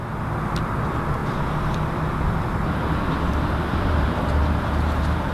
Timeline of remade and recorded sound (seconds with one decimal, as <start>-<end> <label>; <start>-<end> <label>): 0.0-3.7 recorded; 3.7-5.3 remade